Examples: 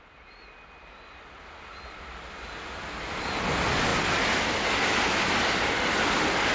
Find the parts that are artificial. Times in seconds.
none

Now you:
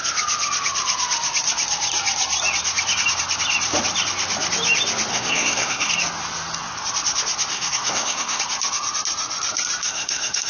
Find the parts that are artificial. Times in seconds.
5.1-5.9 (codec, SNAC); 7.5-8.4; 9.8-10.5